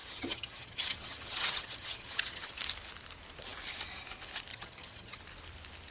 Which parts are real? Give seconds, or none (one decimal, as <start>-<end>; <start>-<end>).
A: 2.5-4.5; 5.2-5.9